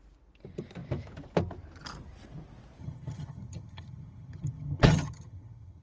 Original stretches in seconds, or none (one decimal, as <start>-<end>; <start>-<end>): 0.0-2.8